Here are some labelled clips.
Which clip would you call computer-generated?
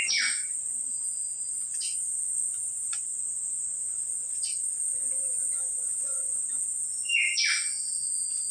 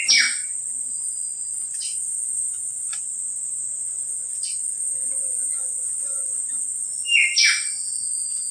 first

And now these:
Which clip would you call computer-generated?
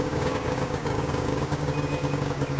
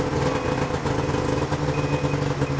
first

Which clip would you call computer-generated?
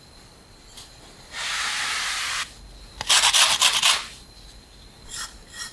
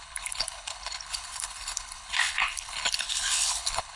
second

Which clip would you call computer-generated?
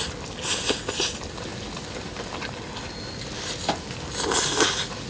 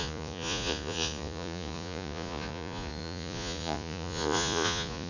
second